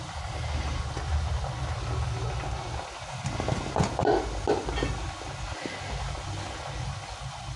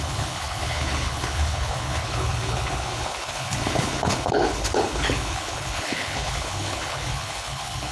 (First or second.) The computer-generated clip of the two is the second